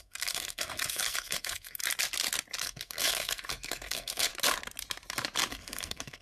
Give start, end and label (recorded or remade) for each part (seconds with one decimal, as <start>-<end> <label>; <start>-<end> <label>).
0.0-1.8 remade; 1.8-2.6 recorded; 2.6-4.3 remade; 4.3-5.5 recorded; 5.5-6.2 remade